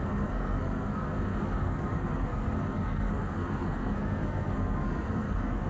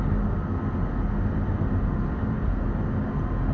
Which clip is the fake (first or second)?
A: first